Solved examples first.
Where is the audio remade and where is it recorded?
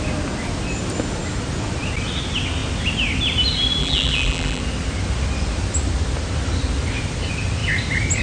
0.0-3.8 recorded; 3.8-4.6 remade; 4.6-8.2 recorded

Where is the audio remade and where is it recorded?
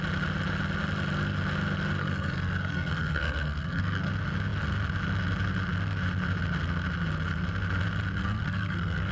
0.0-2.0 recorded; 2.0-4.1 remade; 4.1-8.2 recorded; 8.2-9.1 remade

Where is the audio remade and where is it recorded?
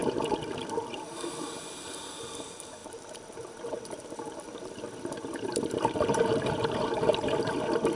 0.0-1.1 remade; 1.1-2.8 recorded; 2.8-7.6 remade; 7.6-8.0 recorded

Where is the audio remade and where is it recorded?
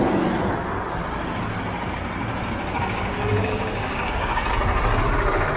0.0-2.8 recorded; 2.8-4.4 remade; 4.4-5.6 recorded